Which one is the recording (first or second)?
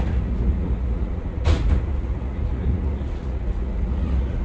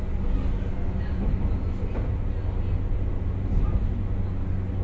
second